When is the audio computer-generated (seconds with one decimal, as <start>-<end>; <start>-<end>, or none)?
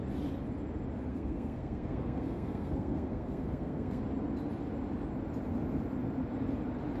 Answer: 1.1-4.0